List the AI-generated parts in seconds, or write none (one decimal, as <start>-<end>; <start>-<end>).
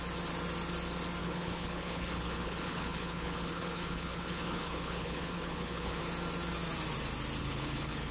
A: 1.2-6.0; 7.4-8.1